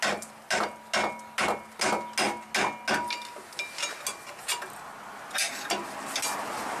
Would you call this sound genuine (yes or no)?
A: yes